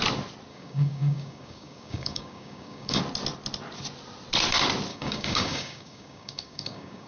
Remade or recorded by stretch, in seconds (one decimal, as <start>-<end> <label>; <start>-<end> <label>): 0.0-0.5 recorded; 0.5-3.0 remade; 3.0-4.9 recorded; 4.9-7.1 remade